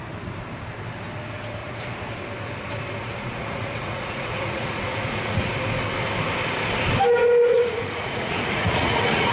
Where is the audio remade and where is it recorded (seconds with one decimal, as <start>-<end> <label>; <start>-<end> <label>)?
0.0-1.6 recorded; 1.6-2.1 remade; 2.1-3.0 recorded; 3.0-5.5 remade; 5.5-7.5 recorded; 7.5-9.3 remade